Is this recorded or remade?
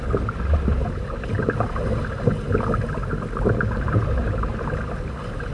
recorded